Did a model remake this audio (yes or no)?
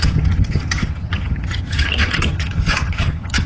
yes